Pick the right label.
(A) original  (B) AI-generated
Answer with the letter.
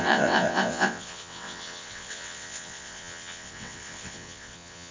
B